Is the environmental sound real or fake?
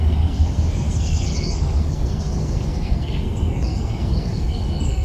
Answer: fake